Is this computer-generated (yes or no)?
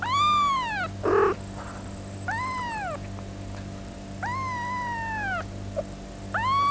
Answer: no